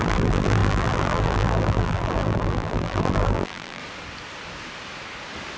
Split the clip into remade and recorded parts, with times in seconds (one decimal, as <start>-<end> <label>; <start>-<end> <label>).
0.0-3.8 remade; 3.8-5.6 recorded